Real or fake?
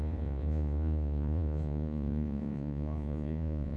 fake